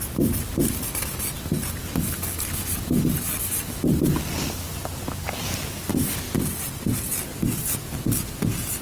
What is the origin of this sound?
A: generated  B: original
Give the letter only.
B